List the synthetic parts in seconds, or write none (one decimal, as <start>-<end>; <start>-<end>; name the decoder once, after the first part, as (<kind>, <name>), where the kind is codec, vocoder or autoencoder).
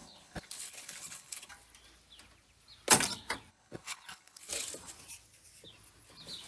0.0-1.5 (codec, HILCodec); 3.5-4.5